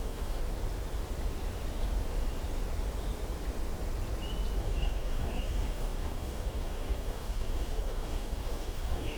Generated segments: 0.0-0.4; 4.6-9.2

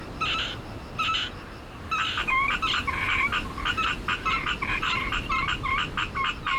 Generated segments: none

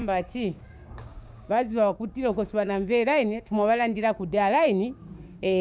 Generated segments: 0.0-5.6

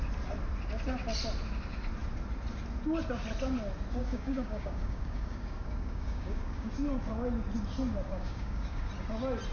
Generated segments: 4.0-6.7; 8.1-8.9

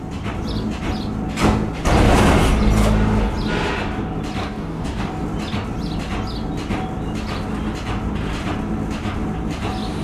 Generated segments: 4.4-5.1

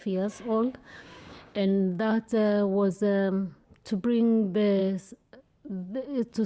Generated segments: 0.0-3.7; 4.8-5.4